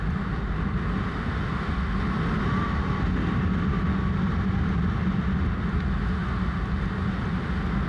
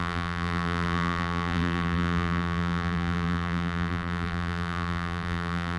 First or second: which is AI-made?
second